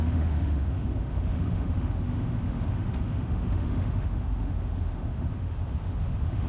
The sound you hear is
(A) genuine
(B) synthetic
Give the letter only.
B